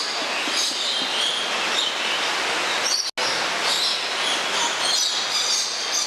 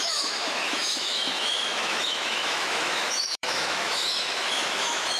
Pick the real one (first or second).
first